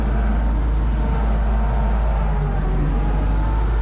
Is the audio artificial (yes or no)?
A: no